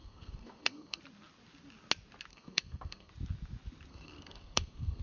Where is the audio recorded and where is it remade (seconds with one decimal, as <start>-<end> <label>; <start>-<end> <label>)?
0.0-1.0 remade; 1.0-2.3 recorded; 2.3-3.1 remade; 3.1-3.9 recorded; 3.9-5.0 remade